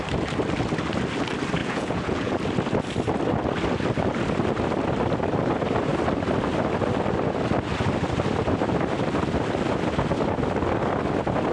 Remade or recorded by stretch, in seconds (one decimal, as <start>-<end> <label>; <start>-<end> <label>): 0.0-1.6 recorded; 1.6-2.4 remade; 2.4-11.5 recorded